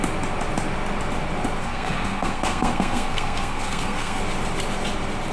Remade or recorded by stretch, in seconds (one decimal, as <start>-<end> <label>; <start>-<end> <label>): 0.0-1.6 recorded; 1.6-4.2 remade; 4.2-5.3 recorded